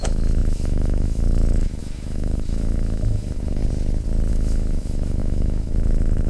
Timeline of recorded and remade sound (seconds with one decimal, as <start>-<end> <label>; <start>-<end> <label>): 0.0-3.6 remade; 3.6-4.3 recorded; 4.3-6.3 remade